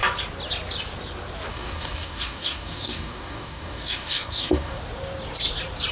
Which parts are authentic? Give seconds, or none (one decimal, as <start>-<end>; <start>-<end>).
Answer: 0.0-1.5; 4.8-5.9